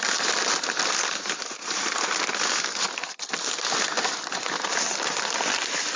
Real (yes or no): yes